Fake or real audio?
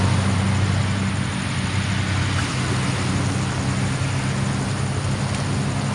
real